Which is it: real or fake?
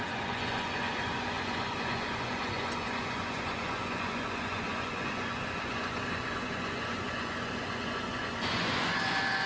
fake